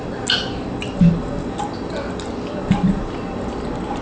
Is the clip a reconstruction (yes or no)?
no